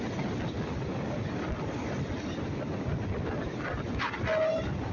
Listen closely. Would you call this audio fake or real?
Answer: real